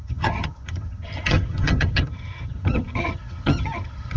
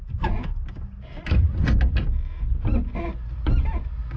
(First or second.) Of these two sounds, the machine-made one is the first